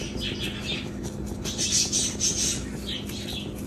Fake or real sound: real